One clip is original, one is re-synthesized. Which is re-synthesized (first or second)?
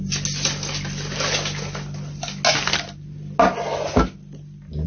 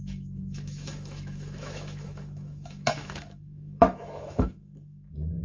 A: second